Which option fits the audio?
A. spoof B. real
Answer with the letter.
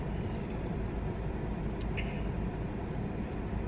B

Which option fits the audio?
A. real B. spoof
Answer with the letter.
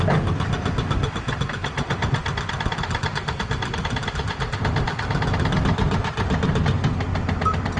A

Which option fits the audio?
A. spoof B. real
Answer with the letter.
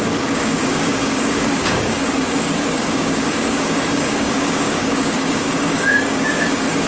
A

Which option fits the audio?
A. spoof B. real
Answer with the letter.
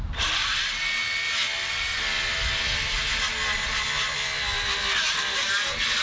B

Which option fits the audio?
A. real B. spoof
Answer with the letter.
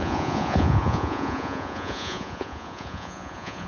B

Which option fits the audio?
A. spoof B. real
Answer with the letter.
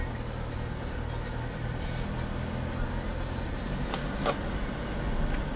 B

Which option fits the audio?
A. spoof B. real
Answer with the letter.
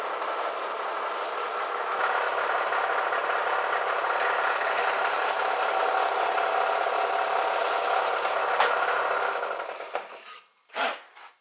B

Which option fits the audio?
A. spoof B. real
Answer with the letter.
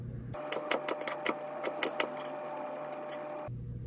B